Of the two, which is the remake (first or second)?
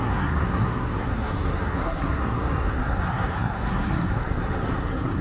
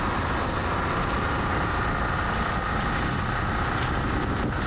first